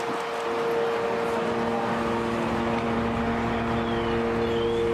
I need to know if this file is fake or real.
real